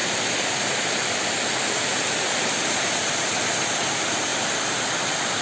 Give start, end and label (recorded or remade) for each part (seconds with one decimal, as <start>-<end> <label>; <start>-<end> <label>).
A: 0.0-3.2 remade; 3.2-4.3 recorded; 4.3-5.4 remade